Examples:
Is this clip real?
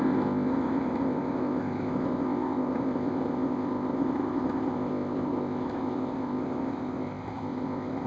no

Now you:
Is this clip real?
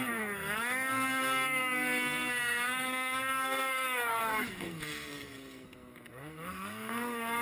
no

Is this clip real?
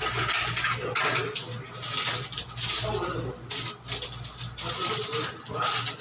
yes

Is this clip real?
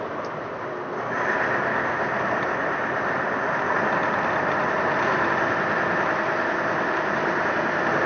yes